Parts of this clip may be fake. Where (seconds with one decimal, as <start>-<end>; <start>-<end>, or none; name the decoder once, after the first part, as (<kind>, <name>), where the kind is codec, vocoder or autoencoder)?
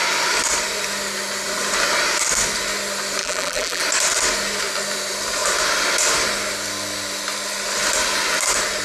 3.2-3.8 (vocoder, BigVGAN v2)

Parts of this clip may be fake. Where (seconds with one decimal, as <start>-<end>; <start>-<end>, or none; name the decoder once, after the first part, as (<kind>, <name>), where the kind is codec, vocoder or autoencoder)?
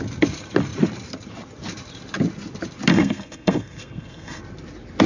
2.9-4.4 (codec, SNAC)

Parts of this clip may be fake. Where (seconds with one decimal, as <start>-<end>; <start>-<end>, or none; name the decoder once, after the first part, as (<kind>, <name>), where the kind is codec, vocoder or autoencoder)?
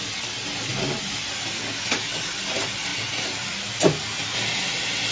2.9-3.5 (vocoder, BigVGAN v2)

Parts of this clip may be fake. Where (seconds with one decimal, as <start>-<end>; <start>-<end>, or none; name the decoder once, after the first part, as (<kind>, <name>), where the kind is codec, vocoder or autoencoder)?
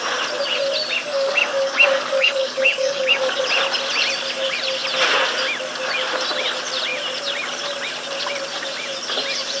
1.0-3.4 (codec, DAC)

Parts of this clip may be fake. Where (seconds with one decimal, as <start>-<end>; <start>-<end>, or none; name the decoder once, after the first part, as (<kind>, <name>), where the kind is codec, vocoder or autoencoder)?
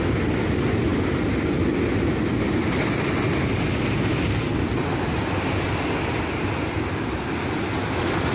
none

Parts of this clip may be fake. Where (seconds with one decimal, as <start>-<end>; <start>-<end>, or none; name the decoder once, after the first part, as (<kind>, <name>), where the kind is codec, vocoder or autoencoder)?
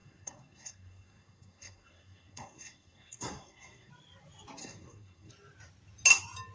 0.0-3.9 (codec, SNAC); 4.6-5.3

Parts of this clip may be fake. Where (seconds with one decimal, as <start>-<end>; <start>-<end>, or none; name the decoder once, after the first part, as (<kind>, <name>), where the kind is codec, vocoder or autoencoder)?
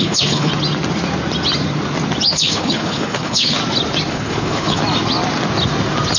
0.0-0.5 (codec, HILCodec); 2.3-3.6; 4.1-4.8